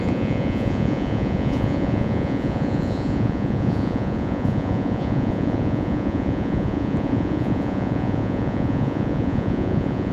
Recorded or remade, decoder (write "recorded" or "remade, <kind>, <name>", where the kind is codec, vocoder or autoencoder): remade, vocoder, Vocos